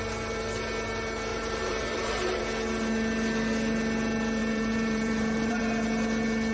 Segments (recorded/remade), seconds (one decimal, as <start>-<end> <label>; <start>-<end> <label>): 0.0-1.3 recorded; 1.3-2.4 remade; 2.4-4.4 recorded; 4.4-5.6 remade; 5.6-6.5 recorded